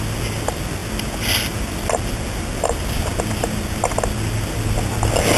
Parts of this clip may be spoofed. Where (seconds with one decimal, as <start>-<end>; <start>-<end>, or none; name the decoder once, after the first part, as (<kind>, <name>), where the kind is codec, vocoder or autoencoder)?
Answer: none